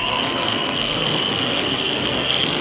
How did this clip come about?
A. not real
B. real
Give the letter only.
A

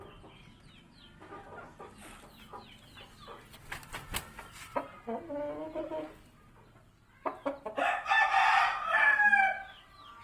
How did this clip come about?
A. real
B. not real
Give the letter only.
A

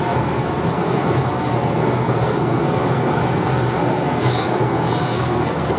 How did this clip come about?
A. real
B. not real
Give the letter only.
B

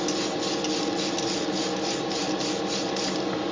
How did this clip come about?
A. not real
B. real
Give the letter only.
B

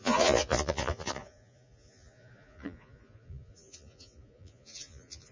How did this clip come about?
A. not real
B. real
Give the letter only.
A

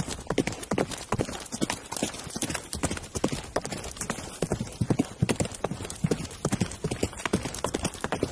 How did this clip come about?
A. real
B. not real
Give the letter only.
B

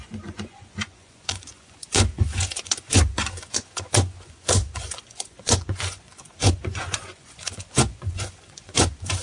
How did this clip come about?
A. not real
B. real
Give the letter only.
A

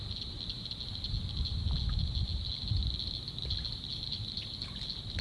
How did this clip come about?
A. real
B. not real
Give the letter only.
A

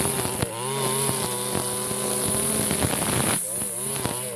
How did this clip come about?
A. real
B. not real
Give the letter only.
A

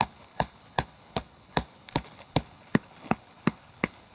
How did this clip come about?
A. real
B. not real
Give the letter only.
B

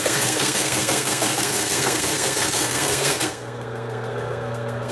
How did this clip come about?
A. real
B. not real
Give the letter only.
B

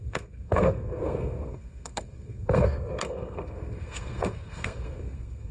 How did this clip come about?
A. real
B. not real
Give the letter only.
B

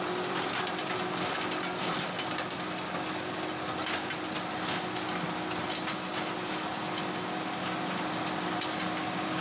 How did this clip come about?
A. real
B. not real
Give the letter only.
A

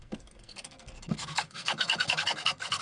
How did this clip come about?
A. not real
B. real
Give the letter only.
A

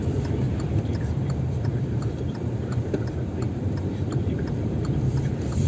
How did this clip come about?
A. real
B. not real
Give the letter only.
B